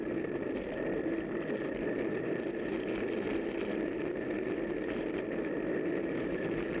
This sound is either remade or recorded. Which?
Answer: recorded